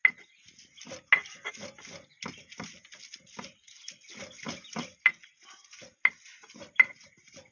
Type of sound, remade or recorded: recorded